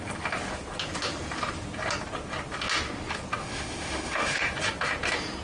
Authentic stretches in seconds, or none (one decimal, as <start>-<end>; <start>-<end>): 0.0-3.4; 4.4-5.4